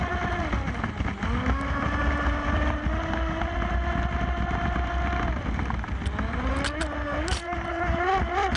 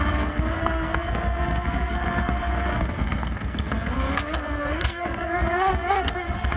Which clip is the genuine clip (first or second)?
first